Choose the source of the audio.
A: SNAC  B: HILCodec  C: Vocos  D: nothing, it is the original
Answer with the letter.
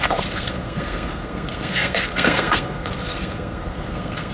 A